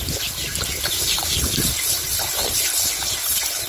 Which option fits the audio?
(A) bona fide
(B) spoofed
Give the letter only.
A